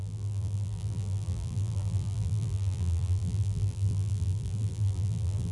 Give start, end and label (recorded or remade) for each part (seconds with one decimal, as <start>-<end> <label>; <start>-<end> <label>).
0.0-5.5 remade